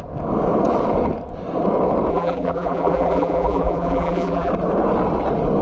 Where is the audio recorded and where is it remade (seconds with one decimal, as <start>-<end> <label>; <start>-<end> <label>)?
0.0-2.1 recorded; 2.1-4.5 remade; 4.5-5.6 recorded